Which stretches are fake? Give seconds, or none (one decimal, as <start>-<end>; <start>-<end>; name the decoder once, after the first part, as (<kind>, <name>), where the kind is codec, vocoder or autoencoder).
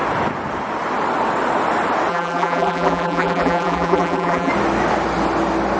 2.1-4.5 (vocoder, BigVGAN v2)